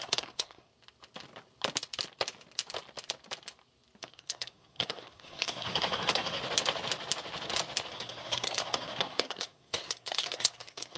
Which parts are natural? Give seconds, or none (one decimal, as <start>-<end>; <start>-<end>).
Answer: 0.7-4.0; 6.4-7.9